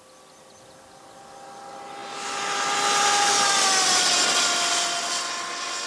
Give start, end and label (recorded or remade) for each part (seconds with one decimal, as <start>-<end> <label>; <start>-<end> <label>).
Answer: 0.0-5.9 recorded